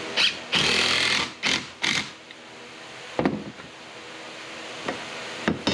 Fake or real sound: real